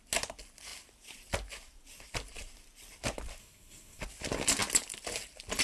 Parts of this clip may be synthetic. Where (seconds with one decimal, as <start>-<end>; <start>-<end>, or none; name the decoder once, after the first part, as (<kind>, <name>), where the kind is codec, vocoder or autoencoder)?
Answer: 3.4-4.0 (codec, SNAC)